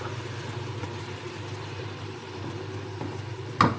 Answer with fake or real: fake